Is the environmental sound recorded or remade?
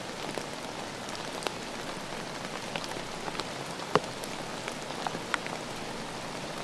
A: recorded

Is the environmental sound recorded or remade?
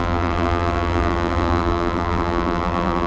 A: remade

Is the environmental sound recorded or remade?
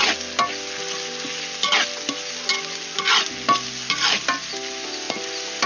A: recorded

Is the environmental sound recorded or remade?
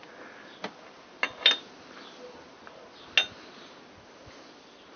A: recorded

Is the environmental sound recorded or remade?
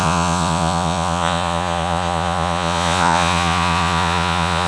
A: remade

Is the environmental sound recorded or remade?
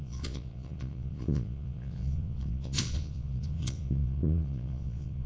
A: remade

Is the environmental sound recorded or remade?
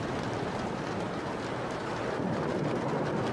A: recorded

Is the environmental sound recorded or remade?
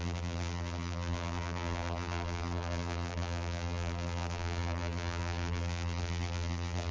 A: remade